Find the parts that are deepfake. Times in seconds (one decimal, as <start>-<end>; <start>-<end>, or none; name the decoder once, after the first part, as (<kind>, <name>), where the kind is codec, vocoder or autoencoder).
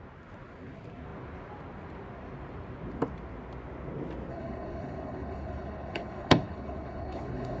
4.3-7.6 (codec, HILCodec)